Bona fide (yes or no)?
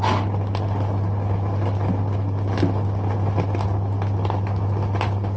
yes